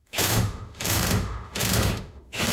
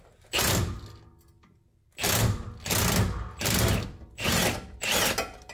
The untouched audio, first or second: second